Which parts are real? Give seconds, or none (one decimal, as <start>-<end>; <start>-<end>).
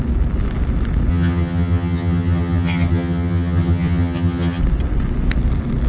0.0-1.1; 4.6-5.9